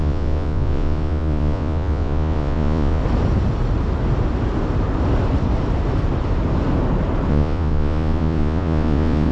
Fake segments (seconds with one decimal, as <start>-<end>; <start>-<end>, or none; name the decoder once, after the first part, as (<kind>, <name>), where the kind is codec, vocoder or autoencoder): 0.0-3.0 (vocoder, Vocos); 7.3-9.3